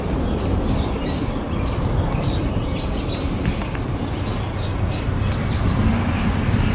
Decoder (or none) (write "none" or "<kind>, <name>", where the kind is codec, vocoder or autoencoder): none